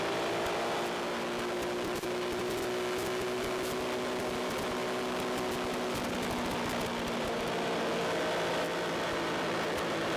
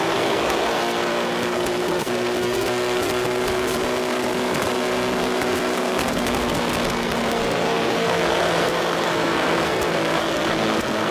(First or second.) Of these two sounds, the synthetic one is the second